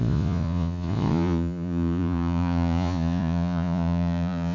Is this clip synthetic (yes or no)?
yes